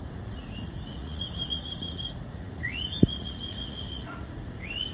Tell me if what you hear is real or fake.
fake